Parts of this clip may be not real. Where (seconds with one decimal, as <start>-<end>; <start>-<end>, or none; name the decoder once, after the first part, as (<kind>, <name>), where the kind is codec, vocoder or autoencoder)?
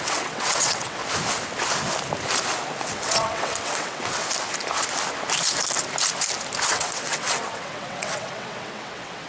0.0-1.0 (vocoder, WaveNeXt); 2.8-4.2; 6.7-9.3